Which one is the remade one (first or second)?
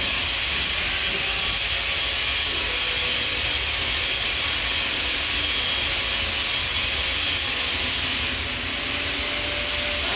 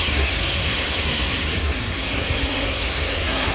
second